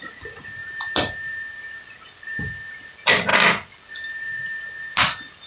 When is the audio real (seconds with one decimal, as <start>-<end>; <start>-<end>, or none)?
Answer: 0.0-5.5